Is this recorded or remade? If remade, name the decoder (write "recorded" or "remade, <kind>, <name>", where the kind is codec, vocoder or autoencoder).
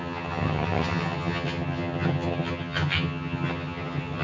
remade, vocoder, HiFi-GAN